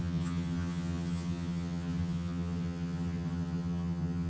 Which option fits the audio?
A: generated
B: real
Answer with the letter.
A